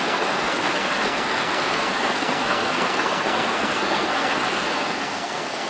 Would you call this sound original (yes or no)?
no